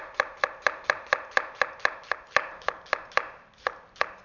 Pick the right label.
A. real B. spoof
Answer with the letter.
A